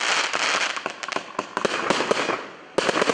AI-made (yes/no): no